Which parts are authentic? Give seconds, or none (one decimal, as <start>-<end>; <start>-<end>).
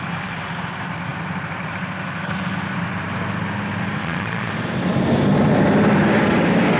0.0-4.0; 4.5-6.8